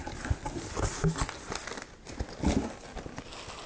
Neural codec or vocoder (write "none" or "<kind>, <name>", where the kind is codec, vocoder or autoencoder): none